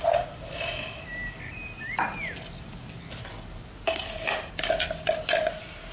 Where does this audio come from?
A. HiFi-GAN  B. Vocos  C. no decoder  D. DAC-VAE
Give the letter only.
C